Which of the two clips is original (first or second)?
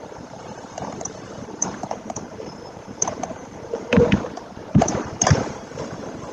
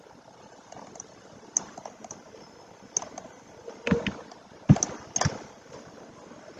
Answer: second